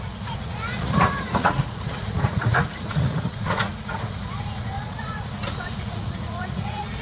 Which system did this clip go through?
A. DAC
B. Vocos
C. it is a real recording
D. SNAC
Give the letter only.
B